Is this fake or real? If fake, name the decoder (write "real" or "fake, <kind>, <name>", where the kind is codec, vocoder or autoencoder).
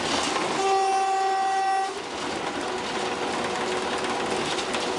real